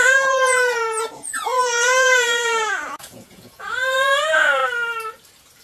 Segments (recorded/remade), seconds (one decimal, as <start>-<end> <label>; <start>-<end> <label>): 0.0-4.6 remade; 4.6-5.6 recorded